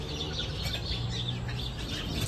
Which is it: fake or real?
real